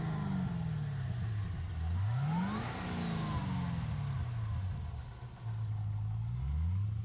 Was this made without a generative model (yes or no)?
yes